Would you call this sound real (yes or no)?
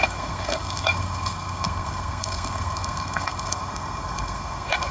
no